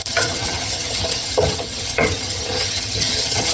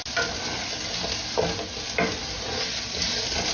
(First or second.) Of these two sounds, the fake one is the first